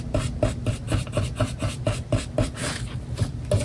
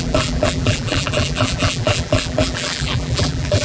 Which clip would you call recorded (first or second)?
first